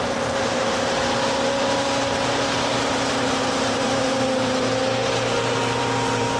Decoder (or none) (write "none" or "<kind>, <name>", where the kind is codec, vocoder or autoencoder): vocoder, BigVGAN v2